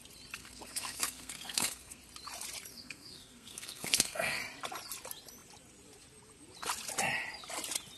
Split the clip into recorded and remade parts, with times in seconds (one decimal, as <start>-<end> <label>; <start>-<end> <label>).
0.0-0.4 recorded; 0.4-2.0 remade; 2.0-2.7 recorded; 2.7-4.4 remade; 4.4-8.0 recorded